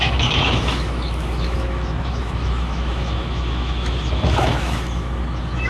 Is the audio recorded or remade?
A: remade